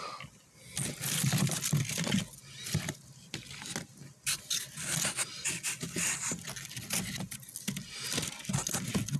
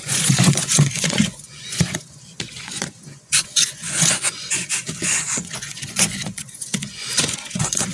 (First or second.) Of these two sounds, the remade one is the second